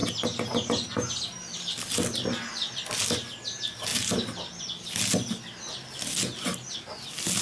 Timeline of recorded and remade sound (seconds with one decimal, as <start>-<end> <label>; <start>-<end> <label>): 0.0-7.4 recorded

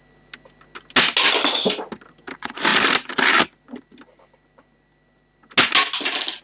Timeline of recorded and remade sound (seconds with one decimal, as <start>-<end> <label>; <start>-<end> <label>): 0.0-6.4 recorded

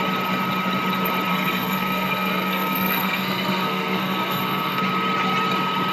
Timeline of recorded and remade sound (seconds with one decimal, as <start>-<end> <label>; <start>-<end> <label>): 0.0-1.3 recorded; 1.3-4.8 remade; 4.8-5.9 recorded

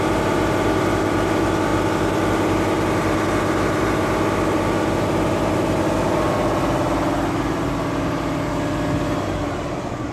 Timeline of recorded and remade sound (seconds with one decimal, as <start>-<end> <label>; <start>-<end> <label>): 0.0-10.1 recorded

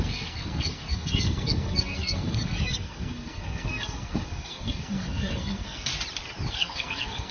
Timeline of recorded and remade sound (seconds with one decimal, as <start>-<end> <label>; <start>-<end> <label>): 0.0-5.9 remade; 5.9-6.5 recorded; 6.5-7.3 remade

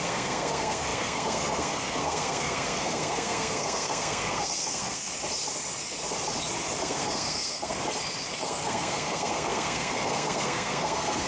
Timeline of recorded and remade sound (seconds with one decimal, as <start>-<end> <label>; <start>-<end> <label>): 0.0-5.1 remade; 5.1-6.8 recorded; 6.8-7.8 remade; 7.8-8.4 recorded; 8.4-11.3 remade

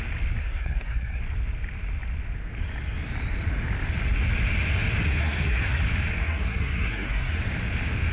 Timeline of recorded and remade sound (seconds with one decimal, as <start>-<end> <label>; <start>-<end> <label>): 0.0-0.4 recorded; 0.4-1.2 remade; 1.2-5.0 recorded; 5.0-5.8 remade; 5.8-6.2 recorded; 6.2-7.4 remade; 7.4-8.1 recorded

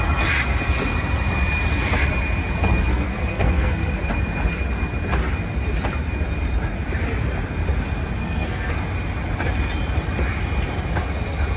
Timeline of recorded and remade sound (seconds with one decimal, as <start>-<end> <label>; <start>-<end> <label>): 0.0-2.9 recorded; 2.9-4.1 remade; 4.1-8.2 recorded; 8.2-8.7 remade; 8.7-11.6 recorded